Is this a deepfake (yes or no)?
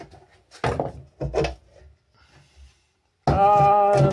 no